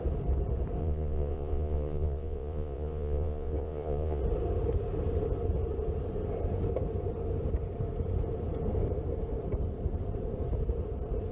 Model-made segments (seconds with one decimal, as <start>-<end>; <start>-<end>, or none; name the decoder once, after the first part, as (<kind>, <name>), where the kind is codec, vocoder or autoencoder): 0.8-4.2 (vocoder, Vocos)